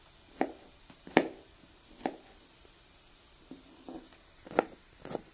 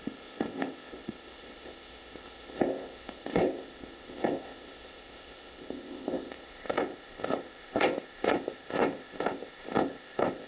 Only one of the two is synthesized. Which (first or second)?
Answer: second